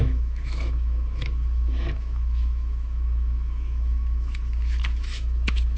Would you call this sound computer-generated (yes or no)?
yes